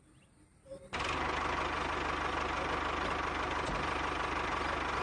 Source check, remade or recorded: recorded